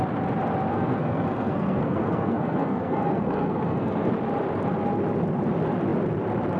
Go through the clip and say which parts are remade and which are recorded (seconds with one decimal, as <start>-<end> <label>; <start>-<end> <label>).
0.0-0.7 recorded; 0.7-4.1 remade; 4.1-6.6 recorded